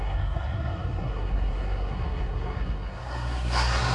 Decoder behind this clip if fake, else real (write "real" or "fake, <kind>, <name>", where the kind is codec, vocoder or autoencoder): fake, codec, SNAC